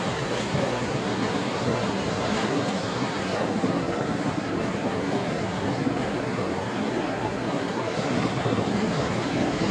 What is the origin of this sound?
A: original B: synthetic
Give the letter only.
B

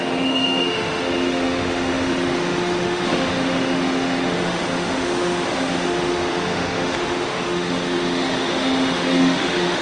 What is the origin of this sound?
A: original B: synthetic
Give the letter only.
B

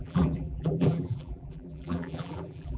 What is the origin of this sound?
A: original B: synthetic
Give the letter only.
B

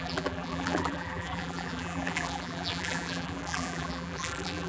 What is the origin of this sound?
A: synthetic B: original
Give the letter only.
A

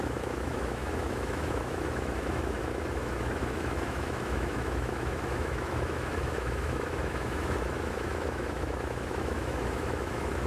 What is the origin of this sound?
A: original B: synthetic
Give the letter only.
B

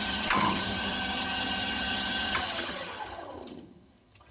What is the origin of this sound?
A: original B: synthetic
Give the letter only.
B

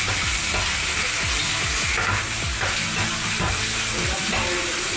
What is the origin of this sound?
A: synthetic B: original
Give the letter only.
B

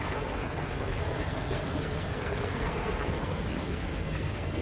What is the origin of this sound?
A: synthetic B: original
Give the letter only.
A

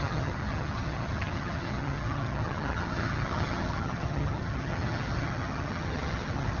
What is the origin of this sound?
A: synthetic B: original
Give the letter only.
A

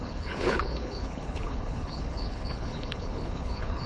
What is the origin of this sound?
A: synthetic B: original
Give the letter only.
A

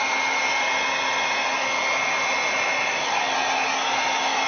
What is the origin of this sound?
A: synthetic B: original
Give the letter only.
B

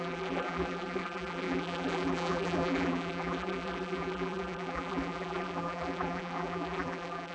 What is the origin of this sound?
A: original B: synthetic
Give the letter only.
B